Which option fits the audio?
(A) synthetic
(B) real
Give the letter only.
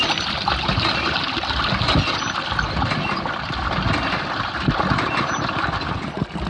B